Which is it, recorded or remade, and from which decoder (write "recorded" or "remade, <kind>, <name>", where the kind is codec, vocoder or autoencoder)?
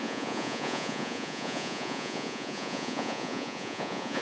remade, vocoder, Vocos